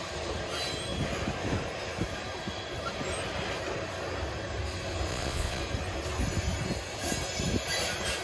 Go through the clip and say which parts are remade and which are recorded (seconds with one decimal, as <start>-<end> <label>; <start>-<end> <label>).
0.0-5.1 recorded; 5.1-5.6 remade; 5.6-8.2 recorded